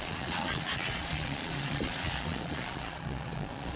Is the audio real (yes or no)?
no